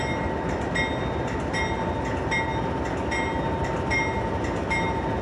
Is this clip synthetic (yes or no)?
no